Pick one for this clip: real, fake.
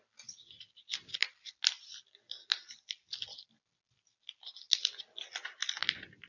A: real